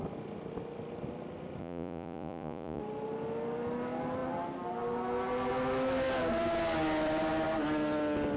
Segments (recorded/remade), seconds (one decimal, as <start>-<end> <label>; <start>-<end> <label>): 0.0-1.6 recorded; 1.6-2.8 remade; 2.8-8.4 recorded